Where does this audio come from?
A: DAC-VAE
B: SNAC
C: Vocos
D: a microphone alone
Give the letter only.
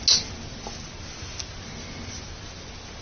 D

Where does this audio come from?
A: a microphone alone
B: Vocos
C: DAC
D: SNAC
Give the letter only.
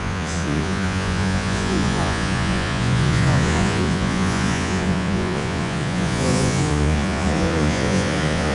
B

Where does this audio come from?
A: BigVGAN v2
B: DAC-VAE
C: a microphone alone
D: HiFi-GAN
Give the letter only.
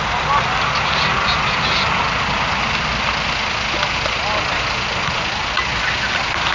C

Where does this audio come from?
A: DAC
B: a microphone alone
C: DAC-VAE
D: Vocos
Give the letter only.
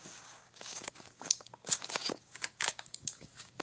A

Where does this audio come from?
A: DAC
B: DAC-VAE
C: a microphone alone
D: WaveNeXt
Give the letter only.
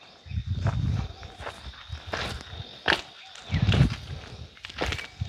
C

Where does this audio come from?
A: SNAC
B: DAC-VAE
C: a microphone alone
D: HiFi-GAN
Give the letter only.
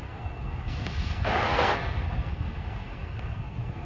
A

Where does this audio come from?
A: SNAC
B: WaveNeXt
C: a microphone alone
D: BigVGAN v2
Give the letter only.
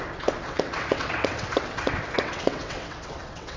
B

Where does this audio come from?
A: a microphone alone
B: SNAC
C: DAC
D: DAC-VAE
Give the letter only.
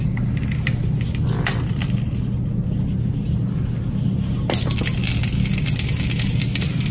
A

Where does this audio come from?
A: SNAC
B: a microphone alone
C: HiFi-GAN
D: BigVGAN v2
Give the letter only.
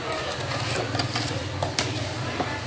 D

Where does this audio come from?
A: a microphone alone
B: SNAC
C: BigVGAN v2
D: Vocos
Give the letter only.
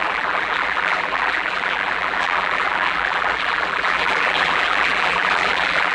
C